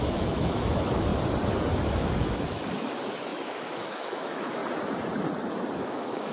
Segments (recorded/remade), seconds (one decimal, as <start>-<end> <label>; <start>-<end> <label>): 0.0-1.1 remade; 1.1-2.0 recorded; 2.0-4.6 remade; 4.6-5.8 recorded; 5.8-6.3 remade